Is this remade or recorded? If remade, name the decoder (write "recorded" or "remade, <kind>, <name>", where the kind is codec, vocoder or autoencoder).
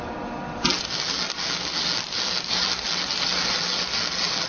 recorded